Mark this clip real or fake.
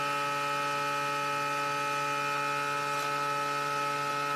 real